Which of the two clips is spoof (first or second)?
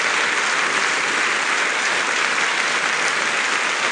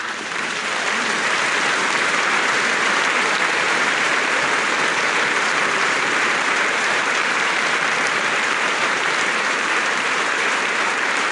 second